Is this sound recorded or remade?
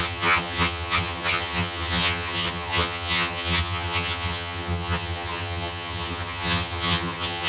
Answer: remade